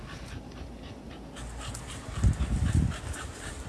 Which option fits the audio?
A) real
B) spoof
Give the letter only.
A